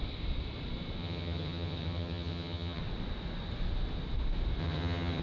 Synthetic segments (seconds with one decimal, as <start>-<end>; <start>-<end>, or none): 1.0-2.8; 4.6-5.2

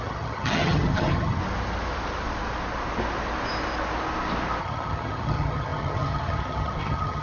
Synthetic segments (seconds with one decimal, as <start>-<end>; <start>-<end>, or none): 0.0-1.4; 4.6-7.2

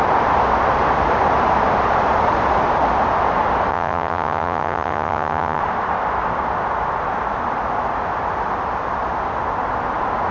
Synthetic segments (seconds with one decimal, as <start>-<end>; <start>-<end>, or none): 3.7-5.6